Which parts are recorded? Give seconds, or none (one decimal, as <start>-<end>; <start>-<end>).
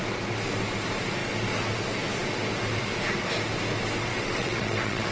0.0-4.1